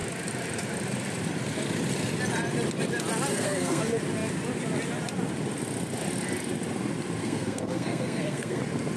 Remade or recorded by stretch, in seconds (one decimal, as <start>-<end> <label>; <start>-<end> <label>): 0.0-3.3 recorded; 3.3-3.8 remade; 3.8-7.2 recorded; 7.2-8.6 remade; 8.6-9.0 recorded

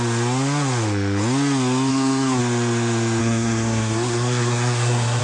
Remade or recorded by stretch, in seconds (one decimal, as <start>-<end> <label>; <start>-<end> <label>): 0.0-1.9 recorded; 1.9-2.4 remade; 2.4-3.2 recorded; 3.2-5.2 remade